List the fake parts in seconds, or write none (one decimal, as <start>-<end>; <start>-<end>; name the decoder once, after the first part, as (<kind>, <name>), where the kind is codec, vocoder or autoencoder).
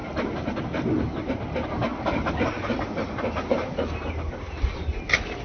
none